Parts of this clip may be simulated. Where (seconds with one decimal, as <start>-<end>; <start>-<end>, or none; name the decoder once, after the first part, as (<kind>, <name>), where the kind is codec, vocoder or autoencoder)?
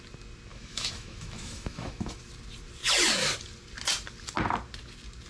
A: 0.5-2.2 (autoencoder, DAC-VAE)